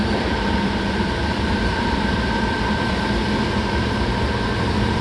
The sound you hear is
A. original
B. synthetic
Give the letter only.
B